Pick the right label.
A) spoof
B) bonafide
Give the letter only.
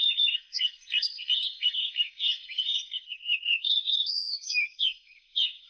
A